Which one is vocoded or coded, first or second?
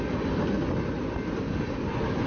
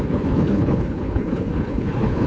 second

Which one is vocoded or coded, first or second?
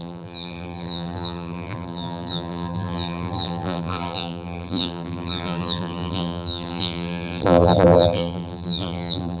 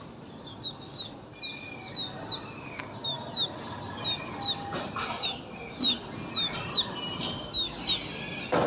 first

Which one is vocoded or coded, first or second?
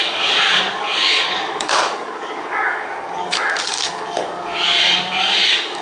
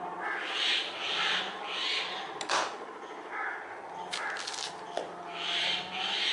first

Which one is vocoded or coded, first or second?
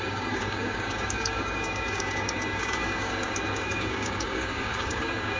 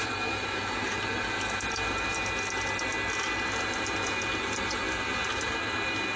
first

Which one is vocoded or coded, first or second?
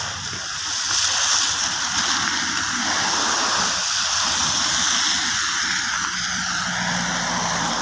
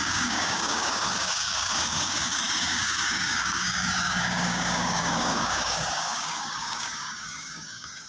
second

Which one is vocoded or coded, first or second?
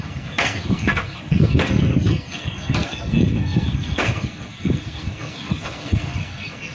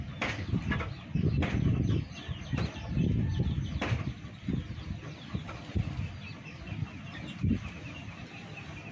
first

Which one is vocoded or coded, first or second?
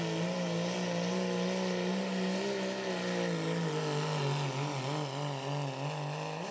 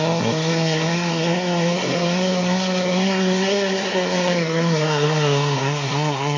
second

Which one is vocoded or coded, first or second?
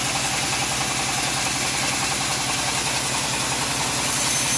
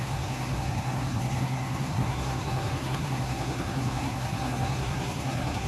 second